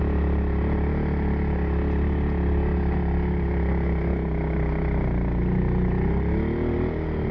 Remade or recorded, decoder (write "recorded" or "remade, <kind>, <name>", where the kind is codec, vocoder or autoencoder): recorded